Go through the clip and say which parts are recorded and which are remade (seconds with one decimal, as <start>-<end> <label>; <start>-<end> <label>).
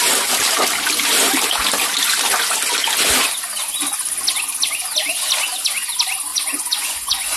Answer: 0.0-6.3 recorded; 6.3-7.4 remade